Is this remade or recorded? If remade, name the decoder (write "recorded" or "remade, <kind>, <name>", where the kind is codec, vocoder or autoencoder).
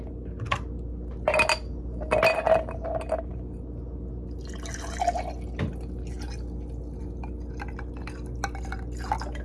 recorded